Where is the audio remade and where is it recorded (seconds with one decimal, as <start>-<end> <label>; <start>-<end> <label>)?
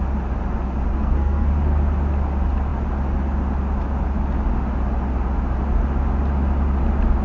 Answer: 0.0-0.9 recorded; 0.9-1.5 remade; 1.5-7.2 recorded